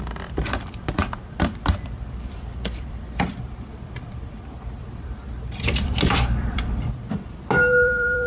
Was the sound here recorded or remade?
remade